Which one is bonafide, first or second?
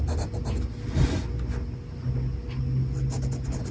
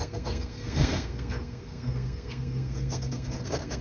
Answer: first